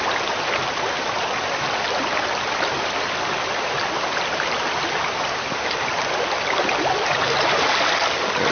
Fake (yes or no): no